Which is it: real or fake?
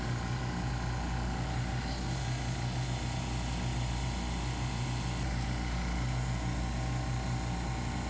real